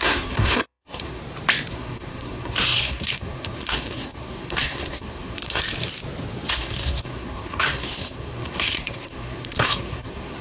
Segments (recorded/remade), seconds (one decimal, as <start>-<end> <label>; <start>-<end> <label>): 0.0-1.2 remade; 1.2-1.7 recorded; 1.7-5.6 remade; 5.6-6.5 recorded; 6.5-10.4 remade